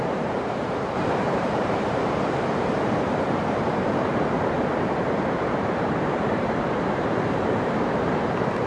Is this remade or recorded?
remade